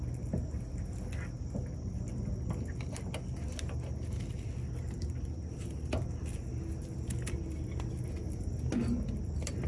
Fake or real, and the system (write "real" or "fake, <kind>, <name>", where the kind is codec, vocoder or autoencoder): real